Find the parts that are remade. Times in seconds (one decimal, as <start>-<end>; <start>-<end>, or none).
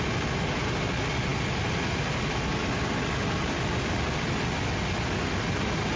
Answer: none